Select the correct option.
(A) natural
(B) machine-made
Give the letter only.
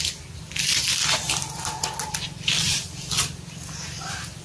A